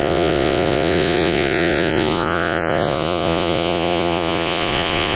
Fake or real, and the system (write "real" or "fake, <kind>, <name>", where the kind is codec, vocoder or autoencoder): fake, vocoder, Vocos